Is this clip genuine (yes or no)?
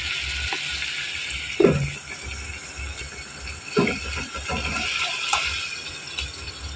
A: yes